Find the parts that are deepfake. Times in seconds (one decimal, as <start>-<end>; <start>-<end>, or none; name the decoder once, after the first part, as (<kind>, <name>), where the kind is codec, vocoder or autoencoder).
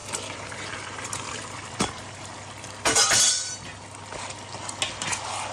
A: 0.0-3.3 (vocoder, BigVGAN v2)